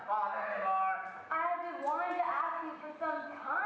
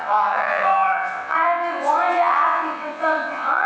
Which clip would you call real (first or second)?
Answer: first